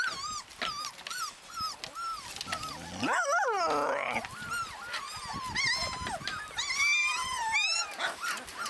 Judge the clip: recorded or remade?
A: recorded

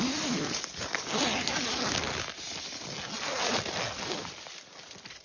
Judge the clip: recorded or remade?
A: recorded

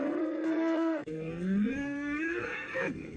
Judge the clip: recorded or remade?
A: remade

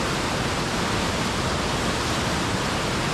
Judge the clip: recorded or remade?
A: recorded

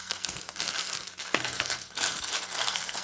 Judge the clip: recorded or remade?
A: remade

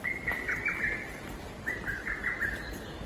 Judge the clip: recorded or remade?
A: recorded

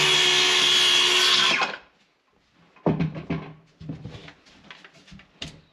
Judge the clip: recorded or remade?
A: recorded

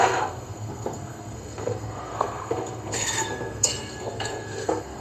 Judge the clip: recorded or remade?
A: remade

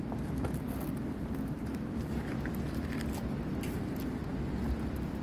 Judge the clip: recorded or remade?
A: recorded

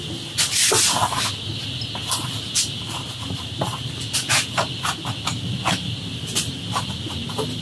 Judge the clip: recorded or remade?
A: recorded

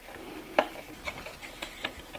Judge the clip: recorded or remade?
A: recorded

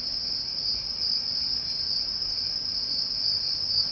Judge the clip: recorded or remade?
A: recorded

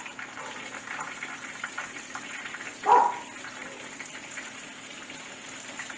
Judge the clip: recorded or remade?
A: recorded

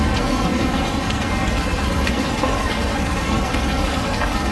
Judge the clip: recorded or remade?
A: remade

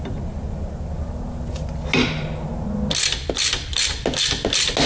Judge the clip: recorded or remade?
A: recorded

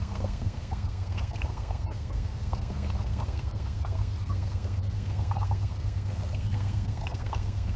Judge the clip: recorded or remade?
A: remade